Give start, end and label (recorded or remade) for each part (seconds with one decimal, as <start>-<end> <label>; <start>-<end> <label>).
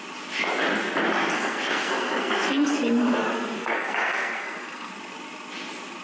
0.0-1.3 recorded; 1.3-4.9 remade; 4.9-6.0 recorded